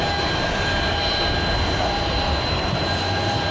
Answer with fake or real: real